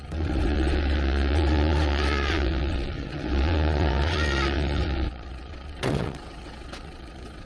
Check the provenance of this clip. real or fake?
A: fake